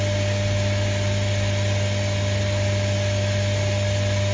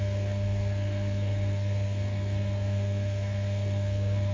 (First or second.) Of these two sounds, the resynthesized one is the second